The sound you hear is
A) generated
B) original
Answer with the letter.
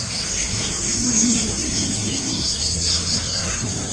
A